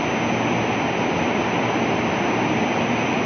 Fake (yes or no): no